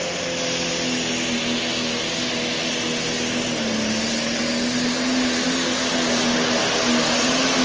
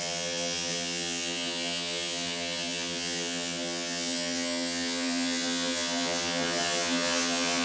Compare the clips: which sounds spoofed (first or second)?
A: second